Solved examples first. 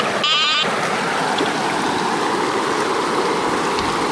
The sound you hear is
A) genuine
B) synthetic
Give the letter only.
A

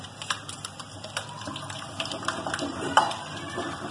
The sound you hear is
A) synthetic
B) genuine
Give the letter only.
A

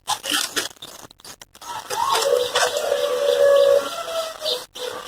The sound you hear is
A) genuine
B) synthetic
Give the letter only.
A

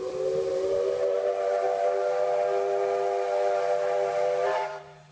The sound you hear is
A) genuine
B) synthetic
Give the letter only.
A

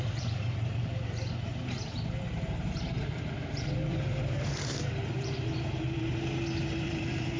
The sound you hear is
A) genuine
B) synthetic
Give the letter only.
B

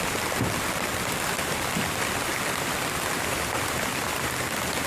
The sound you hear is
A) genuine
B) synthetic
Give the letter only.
B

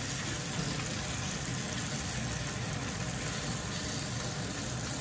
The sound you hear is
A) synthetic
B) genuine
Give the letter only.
B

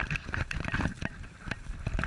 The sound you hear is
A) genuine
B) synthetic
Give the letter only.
B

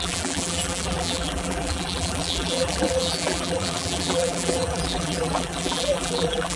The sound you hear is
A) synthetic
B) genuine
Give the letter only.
A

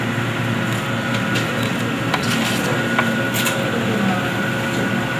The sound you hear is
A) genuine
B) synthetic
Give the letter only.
A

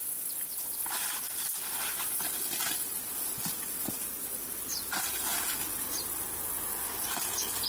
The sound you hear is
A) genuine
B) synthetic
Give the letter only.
A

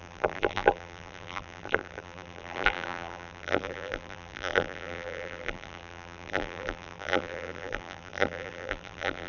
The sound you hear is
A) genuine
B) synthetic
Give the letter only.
B